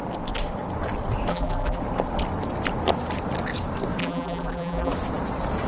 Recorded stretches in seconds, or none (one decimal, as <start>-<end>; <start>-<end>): 0.0-1.3; 1.8-4.0; 4.9-5.7